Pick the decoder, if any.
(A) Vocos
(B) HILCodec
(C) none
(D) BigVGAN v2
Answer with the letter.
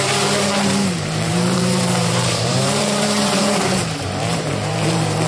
D